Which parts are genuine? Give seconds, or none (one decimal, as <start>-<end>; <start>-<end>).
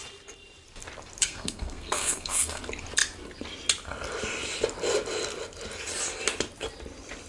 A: 0.0-1.2; 2.6-7.3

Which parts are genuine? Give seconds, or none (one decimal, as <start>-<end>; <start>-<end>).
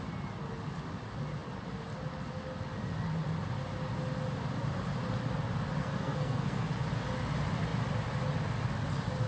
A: 0.0-5.8; 6.7-9.3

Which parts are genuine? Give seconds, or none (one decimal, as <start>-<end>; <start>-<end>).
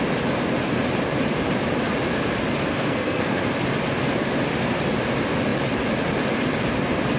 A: 0.0-2.7; 3.5-7.2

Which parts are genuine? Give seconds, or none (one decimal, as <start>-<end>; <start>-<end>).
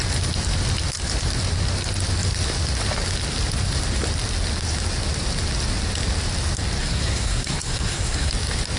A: 0.0-6.8; 8.3-8.8